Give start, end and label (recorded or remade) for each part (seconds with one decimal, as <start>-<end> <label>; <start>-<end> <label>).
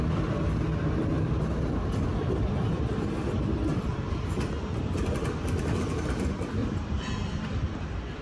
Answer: 0.0-2.1 recorded; 2.1-2.8 remade; 2.8-6.6 recorded; 6.6-8.2 remade